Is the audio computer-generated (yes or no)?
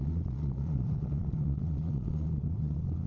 yes